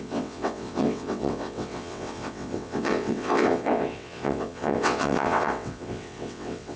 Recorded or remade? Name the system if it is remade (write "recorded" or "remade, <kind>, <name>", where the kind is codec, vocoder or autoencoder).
remade, vocoder, WaveNeXt